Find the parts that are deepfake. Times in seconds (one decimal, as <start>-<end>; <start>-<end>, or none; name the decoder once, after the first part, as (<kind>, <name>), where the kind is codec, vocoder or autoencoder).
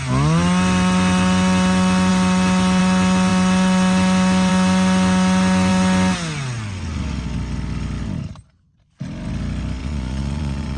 9.8-10.8 (vocoder, Vocos)